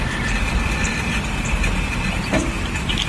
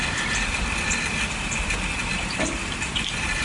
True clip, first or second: first